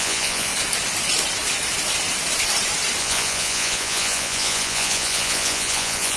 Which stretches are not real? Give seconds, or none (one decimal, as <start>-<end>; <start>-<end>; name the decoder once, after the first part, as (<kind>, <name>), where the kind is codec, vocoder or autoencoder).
0.0-0.5 (vocoder, Vocos); 3.0-6.2